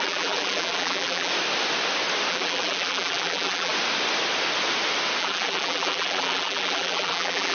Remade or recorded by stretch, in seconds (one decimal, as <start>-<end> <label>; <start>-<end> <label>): 0.0-1.3 remade; 1.3-2.3 recorded; 2.3-3.7 remade; 3.7-5.2 recorded; 5.2-7.5 remade

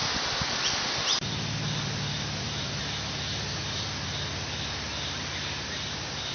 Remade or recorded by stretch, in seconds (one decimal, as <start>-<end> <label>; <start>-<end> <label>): 0.0-2.8 remade; 2.8-6.3 recorded